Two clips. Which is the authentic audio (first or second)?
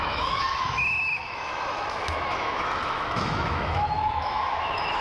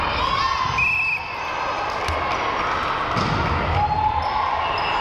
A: second